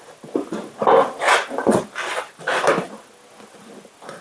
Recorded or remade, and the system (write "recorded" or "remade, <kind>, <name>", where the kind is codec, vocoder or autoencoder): recorded